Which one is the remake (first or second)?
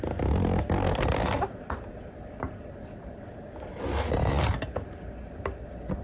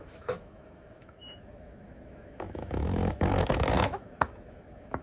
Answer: second